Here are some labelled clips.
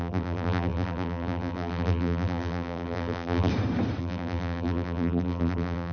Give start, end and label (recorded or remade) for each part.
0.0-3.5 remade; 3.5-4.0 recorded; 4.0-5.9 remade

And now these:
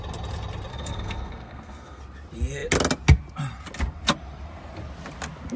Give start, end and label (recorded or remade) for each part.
0.0-0.7 recorded; 0.7-2.0 remade; 2.0-5.6 recorded

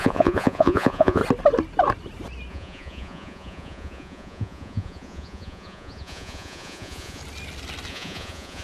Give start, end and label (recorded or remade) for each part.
0.0-1.2 remade; 1.2-2.5 recorded; 2.5-7.2 remade; 7.2-7.9 recorded; 7.9-8.6 remade

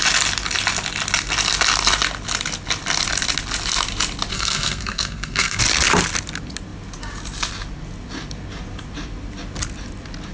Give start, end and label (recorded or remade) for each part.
0.0-4.3 recorded; 4.3-5.6 remade; 5.6-10.3 recorded

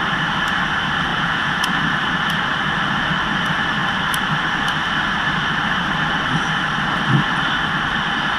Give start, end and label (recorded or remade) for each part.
0.0-1.1 recorded; 1.1-1.6 remade; 1.6-8.4 recorded